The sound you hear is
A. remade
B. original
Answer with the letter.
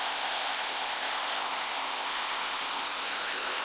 A